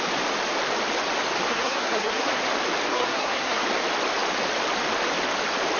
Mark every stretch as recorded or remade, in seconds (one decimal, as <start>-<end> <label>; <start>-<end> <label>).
0.0-1.5 recorded; 1.5-2.4 remade; 2.4-2.9 recorded; 2.9-3.6 remade; 3.6-5.8 recorded